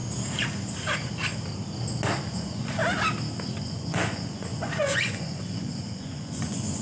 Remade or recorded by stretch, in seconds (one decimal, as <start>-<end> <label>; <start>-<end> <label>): 0.0-2.3 recorded; 2.3-2.8 remade; 2.8-3.6 recorded; 3.6-6.8 remade